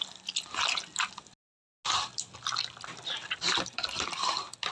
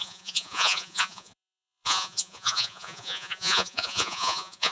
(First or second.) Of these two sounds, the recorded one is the first